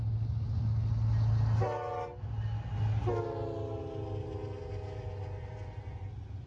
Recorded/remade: recorded